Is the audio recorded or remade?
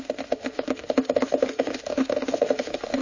remade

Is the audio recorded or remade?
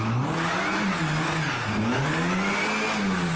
recorded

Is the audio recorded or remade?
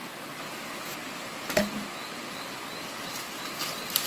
recorded